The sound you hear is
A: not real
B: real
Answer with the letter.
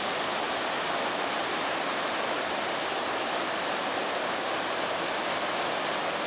B